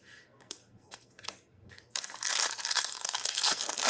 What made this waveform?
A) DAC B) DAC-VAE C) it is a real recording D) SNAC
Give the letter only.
D